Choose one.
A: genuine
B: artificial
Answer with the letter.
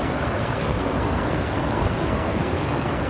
B